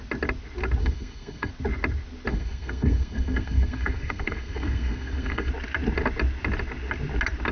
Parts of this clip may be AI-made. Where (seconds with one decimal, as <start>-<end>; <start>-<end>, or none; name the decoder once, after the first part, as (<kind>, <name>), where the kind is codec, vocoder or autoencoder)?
0.8-1.5 (codec, SNAC); 2.3-5.5